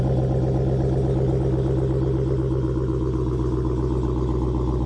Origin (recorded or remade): recorded